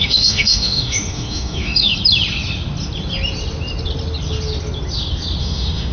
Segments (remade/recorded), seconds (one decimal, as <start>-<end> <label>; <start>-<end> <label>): 0.0-1.9 remade; 1.9-5.4 recorded; 5.4-5.9 remade